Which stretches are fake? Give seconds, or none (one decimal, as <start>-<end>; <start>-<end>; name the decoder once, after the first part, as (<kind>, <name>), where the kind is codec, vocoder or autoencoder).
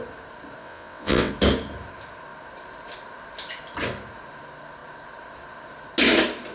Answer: 0.6-1.3 (vocoder, WaveNeXt)